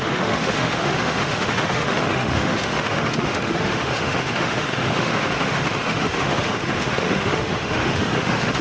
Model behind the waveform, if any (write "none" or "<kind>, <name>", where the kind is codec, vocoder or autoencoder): autoencoder, DAC-VAE